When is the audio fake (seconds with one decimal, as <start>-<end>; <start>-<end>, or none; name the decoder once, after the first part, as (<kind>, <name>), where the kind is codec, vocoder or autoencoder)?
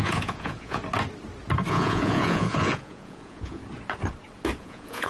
0.0-0.8 (vocoder, Vocos); 1.7-3.6; 4.6-5.1